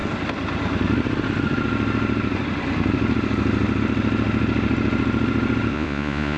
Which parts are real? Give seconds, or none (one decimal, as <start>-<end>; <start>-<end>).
0.0-5.7